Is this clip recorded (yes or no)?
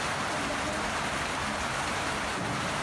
yes